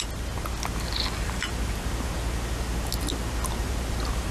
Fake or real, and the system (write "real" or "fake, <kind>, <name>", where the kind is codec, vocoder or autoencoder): real